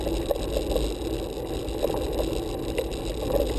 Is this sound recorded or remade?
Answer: recorded